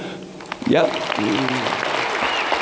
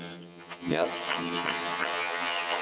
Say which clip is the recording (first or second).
first